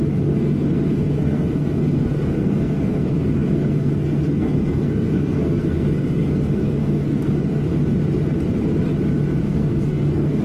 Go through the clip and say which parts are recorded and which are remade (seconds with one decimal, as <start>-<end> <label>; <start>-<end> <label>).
0.0-7.7 remade; 7.7-9.4 recorded; 9.4-10.4 remade